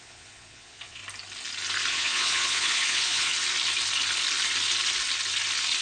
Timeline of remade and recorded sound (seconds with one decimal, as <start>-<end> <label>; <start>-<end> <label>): 0.0-1.0 remade; 1.0-1.9 recorded; 1.9-3.3 remade; 3.3-5.8 recorded